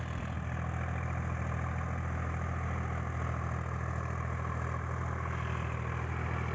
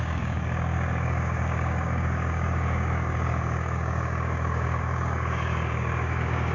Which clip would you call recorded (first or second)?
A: first